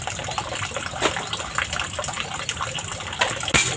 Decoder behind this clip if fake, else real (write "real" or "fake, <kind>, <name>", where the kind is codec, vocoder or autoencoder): real